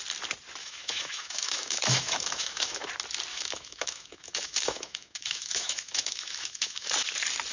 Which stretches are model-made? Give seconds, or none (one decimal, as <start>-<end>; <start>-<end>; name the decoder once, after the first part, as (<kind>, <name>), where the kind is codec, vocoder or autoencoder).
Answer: 0.6-2.9 (autoencoder, DAC-VAE); 3.3-6.9